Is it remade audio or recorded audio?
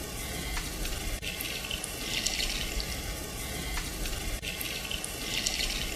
recorded